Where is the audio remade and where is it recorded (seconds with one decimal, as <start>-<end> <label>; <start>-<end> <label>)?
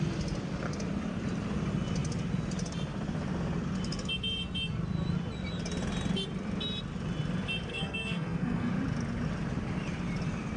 0.0-7.7 recorded; 7.7-8.7 remade; 8.7-10.6 recorded